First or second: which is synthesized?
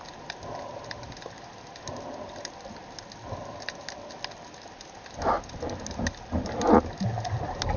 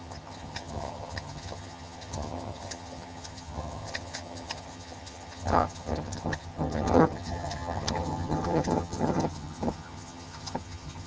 second